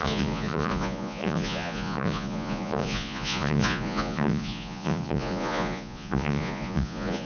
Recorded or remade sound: remade